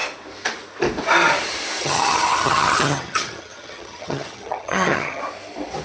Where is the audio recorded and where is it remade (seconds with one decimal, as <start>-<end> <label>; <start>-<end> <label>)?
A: 0.0-1.8 recorded; 1.8-5.2 remade; 5.2-5.8 recorded